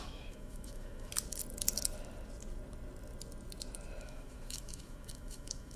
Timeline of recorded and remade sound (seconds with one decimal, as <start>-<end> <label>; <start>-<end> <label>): 0.0-1.1 remade; 1.1-4.0 recorded; 4.0-5.8 remade